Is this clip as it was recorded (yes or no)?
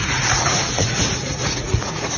no